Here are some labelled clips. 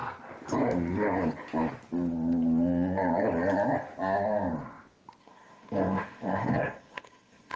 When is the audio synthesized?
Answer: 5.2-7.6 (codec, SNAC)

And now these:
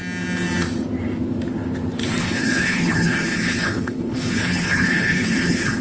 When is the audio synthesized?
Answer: 2.2-5.8 (codec, HILCodec)

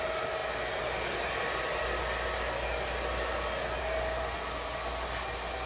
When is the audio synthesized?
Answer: none